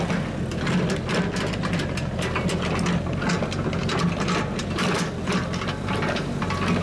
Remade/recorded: recorded